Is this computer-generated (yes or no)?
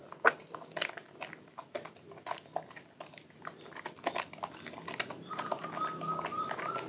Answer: no